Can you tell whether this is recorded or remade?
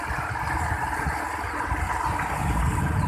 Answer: recorded